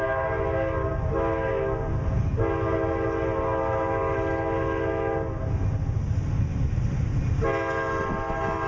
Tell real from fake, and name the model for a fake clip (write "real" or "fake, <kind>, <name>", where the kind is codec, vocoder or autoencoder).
real